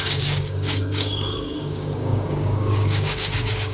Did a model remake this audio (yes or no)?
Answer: yes